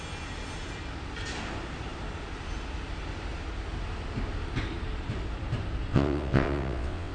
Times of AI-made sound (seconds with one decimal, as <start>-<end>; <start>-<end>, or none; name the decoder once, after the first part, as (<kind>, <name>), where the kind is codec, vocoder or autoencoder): 5.9-7.1 (vocoder, WaveNeXt)